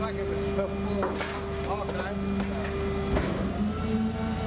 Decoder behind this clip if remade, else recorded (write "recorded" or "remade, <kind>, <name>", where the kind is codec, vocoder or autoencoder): recorded